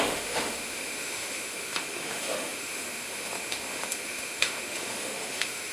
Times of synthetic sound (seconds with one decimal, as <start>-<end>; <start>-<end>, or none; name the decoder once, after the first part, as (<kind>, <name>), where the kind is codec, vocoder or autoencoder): 0.0-5.7 (autoencoder, DAC-VAE)